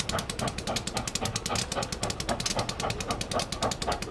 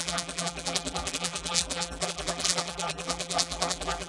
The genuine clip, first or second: first